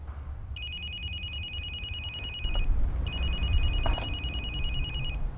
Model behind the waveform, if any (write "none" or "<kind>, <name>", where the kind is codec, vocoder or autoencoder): none